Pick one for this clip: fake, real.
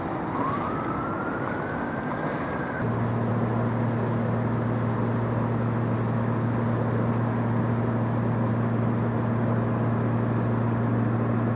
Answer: real